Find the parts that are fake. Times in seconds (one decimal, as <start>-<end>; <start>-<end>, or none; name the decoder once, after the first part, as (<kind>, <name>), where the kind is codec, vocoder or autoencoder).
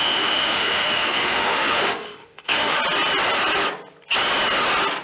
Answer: 0.0-2.8 (autoencoder, DAC-VAE)